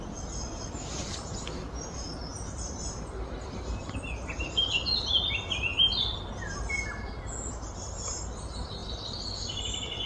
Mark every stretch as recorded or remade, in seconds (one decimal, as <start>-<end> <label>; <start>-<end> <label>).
0.0-10.1 recorded